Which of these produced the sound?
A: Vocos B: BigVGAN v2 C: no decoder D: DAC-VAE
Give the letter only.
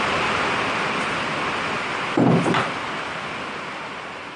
C